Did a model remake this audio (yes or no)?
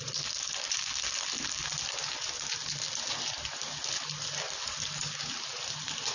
no